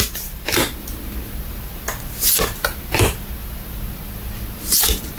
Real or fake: real